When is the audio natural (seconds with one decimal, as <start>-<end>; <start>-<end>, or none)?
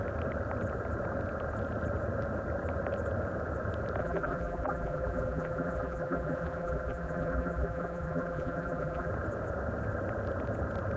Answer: 0.0-4.0; 9.1-11.0